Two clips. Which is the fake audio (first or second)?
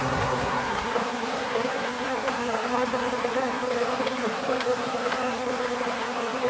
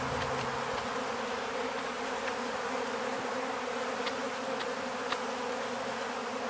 first